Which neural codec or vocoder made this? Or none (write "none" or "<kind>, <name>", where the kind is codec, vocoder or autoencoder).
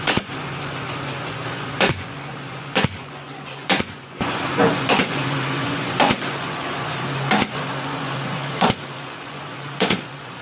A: vocoder, Vocos